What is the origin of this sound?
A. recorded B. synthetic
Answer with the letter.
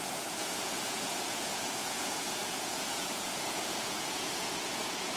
B